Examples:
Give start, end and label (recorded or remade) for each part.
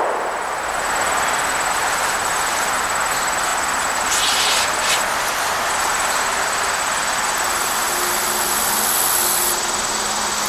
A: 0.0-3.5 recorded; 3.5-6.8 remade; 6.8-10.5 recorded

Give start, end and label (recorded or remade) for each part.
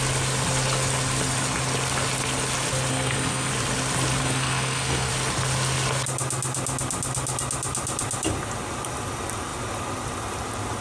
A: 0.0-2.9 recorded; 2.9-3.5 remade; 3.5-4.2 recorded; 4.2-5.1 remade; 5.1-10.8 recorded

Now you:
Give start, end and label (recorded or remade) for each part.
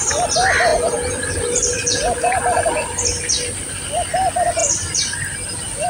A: 0.0-0.7 recorded; 0.7-1.2 remade; 1.2-1.8 recorded; 1.8-2.4 remade; 2.4-5.9 recorded